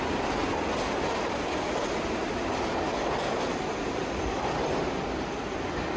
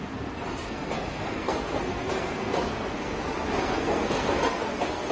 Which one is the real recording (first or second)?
first